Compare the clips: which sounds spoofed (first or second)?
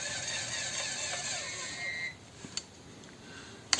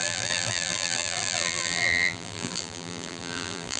second